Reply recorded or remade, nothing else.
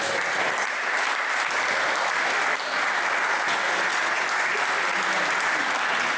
recorded